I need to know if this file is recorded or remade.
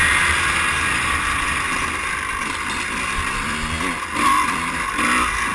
recorded